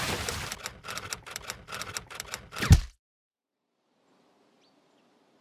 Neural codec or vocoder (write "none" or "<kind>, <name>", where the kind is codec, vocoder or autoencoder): none